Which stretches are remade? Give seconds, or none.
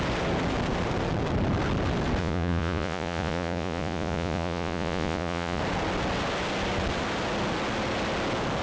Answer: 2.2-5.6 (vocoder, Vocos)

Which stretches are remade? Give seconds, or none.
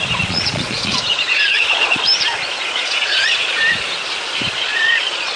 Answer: 0.0-2.1 (vocoder, Vocos); 2.7-3.6; 4.5-5.4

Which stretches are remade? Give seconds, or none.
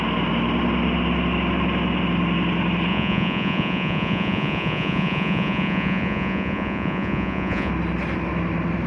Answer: 2.9-7.7 (vocoder, Vocos)